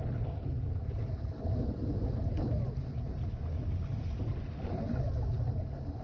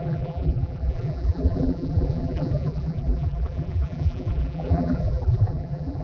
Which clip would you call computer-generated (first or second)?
second